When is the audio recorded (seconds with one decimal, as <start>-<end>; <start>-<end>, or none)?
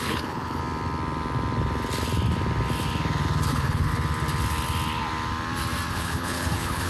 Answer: 0.6-3.5; 3.9-5.9